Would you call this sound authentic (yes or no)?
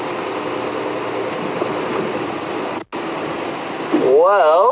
yes